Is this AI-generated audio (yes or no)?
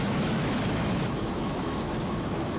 yes